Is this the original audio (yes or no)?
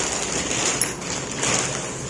yes